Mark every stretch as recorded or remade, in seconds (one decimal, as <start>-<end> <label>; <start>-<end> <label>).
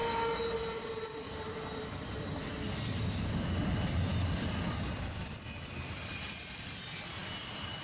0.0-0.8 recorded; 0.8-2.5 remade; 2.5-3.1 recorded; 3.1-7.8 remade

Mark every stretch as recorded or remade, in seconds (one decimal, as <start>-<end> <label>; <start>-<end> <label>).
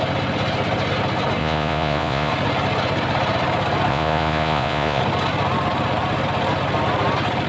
0.0-1.4 recorded; 1.4-2.3 remade; 2.3-3.9 recorded; 3.9-5.0 remade; 5.0-7.5 recorded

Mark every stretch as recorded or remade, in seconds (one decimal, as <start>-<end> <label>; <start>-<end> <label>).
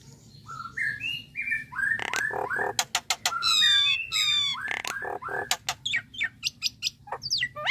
0.0-7.7 recorded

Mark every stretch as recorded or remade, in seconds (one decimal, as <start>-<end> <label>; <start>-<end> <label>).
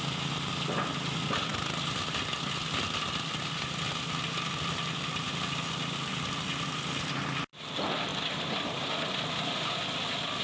0.0-10.4 recorded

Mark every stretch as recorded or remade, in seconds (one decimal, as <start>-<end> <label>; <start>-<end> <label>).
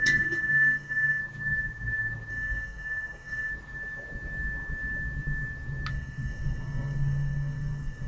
0.0-1.2 remade; 1.2-2.3 recorded; 2.3-3.5 remade; 3.5-5.9 recorded; 5.9-8.1 remade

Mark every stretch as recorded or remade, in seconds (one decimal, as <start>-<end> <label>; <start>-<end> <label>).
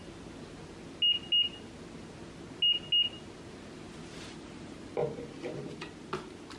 0.0-6.6 recorded